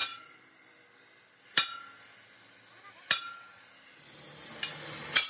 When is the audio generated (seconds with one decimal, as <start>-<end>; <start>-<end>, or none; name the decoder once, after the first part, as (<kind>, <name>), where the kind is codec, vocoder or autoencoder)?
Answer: none